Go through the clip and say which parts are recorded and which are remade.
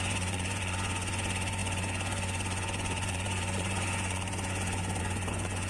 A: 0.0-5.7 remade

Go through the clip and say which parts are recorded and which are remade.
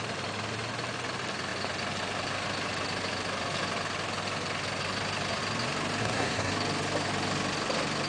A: 0.0-6.0 recorded; 6.0-6.5 remade; 6.5-8.1 recorded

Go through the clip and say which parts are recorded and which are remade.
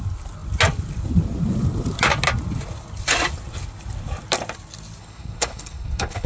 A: 0.0-5.0 recorded; 5.0-6.3 remade